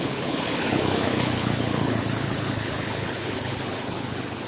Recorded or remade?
remade